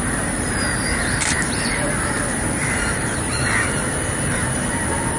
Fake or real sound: fake